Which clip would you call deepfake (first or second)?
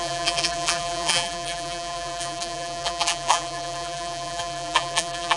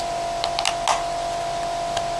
first